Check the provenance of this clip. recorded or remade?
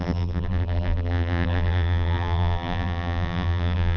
remade